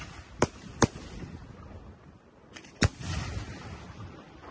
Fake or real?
real